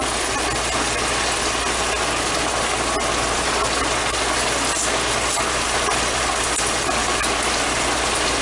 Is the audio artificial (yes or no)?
no